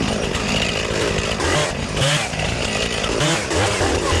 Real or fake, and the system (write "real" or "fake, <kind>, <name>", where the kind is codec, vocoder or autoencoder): real